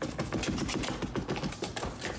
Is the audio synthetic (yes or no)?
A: no